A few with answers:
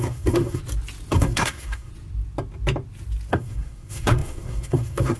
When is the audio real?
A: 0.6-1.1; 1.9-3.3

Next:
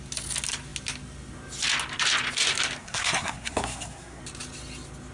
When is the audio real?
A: 0.0-2.8; 4.2-5.1

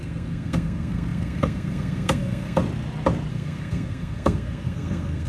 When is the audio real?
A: 2.6-3.3

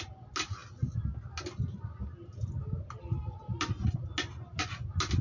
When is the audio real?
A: 0.0-5.2

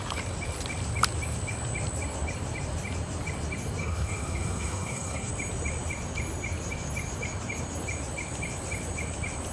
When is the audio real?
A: 0.0-3.8; 5.3-9.5

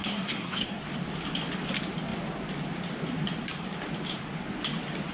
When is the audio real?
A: 0.8-5.1